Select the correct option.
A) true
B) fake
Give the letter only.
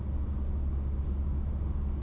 A